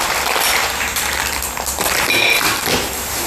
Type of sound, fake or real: real